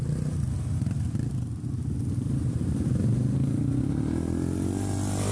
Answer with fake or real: real